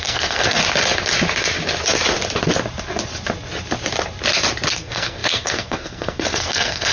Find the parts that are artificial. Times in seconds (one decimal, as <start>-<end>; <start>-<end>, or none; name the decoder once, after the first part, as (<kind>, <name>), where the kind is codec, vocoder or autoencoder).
0.0-0.6 (codec, SNAC); 4.7-6.9